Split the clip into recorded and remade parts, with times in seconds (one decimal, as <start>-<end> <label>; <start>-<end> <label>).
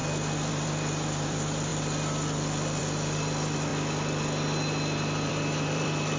0.0-0.5 recorded; 0.5-3.7 remade; 3.7-5.3 recorded; 5.3-6.2 remade